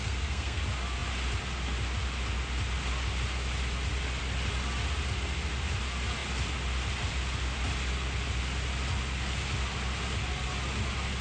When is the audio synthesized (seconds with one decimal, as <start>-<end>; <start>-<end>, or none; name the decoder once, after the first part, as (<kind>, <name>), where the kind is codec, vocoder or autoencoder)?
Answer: 0.0-0.6 (codec, SNAC)